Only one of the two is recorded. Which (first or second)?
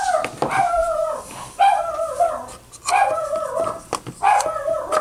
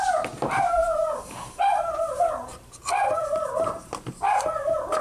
first